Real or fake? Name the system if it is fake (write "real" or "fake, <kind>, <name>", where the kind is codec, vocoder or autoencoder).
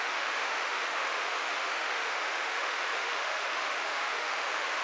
fake, autoencoder, DAC-VAE